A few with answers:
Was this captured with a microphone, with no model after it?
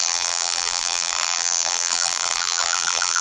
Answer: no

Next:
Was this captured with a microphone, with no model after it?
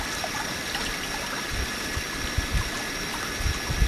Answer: no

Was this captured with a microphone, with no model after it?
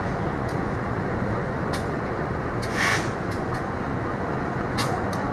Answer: no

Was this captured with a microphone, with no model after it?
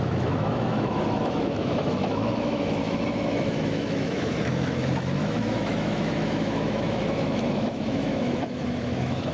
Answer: no